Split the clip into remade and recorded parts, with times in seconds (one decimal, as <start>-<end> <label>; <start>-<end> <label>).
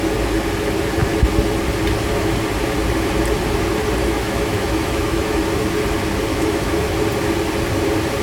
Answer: 0.0-4.0 recorded; 4.0-5.4 remade; 5.4-6.3 recorded; 6.3-6.9 remade; 6.9-8.2 recorded